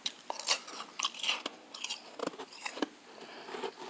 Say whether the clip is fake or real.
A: real